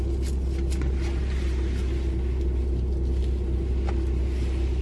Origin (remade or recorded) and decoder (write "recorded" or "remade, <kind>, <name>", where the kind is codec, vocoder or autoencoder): recorded